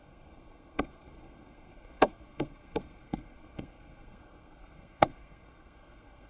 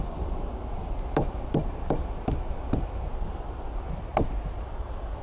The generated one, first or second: first